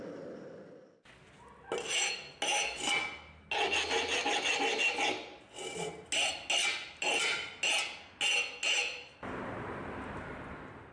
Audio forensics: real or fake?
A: real